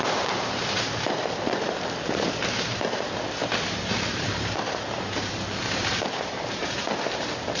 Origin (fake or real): fake